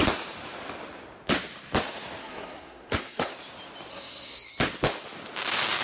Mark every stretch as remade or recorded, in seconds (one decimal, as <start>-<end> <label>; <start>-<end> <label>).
0.0-2.2 recorded; 2.2-3.3 remade; 3.3-3.9 recorded; 3.9-4.5 remade; 4.5-5.8 recorded